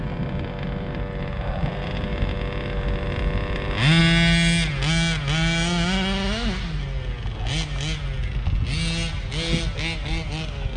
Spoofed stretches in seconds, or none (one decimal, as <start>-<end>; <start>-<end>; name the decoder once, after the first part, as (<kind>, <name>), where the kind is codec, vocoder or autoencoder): none